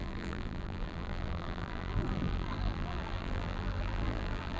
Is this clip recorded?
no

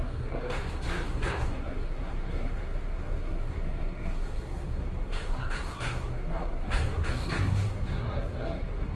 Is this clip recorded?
no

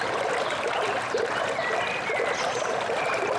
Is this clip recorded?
yes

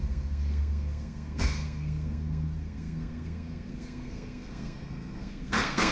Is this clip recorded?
no